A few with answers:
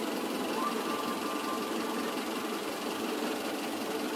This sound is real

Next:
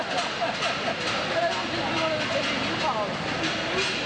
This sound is real